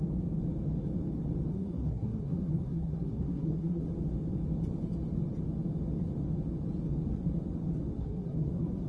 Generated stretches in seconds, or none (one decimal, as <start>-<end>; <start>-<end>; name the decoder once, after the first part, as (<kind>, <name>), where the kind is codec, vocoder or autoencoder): 1.5-3.8 (codec, SNAC); 8.0-8.9